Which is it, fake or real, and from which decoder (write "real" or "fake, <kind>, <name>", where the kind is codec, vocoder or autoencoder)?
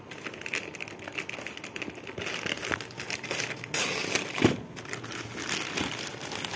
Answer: real